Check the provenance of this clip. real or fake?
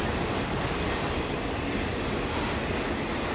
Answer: real